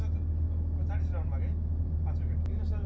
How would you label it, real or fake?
real